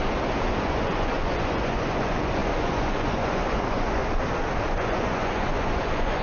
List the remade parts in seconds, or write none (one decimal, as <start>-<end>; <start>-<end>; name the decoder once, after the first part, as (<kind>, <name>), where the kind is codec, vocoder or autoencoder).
0.6-4.0 (vocoder, Vocos); 4.7-6.2